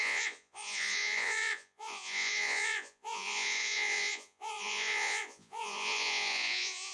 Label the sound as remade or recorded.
remade